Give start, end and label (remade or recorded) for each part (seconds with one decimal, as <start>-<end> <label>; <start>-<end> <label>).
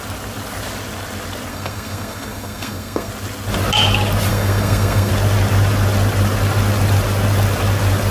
0.0-1.5 recorded; 1.5-3.1 remade; 3.1-4.3 recorded; 4.3-5.1 remade; 5.1-8.1 recorded